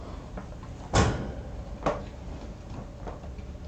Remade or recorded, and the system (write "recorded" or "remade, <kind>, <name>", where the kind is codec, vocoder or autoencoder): recorded